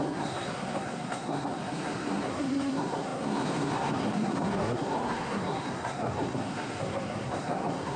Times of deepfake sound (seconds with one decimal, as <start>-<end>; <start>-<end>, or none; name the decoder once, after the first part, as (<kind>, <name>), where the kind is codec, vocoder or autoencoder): 0.0-8.0 (codec, SNAC)

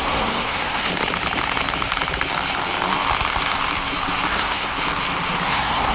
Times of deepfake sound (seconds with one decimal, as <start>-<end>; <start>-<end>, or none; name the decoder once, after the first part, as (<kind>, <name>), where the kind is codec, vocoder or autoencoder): 0.0-0.9 (codec, SNAC); 4.3-4.7; 5.5-5.9